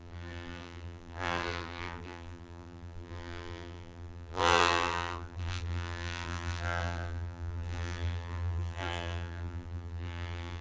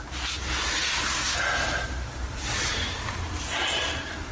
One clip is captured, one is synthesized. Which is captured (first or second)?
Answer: second